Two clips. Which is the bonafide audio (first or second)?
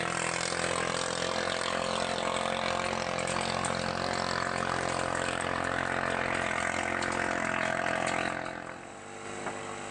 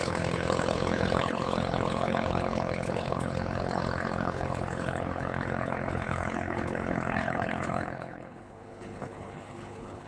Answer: first